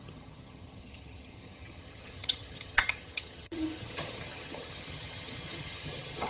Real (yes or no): no